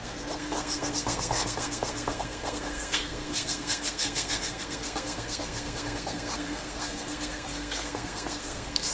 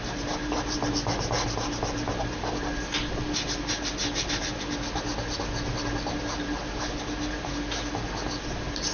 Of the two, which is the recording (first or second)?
second